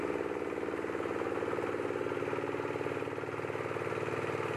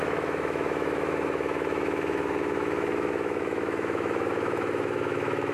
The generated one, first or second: second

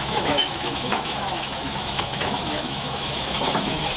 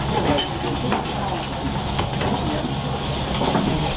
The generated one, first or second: first